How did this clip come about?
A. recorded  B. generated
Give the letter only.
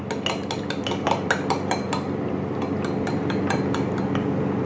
A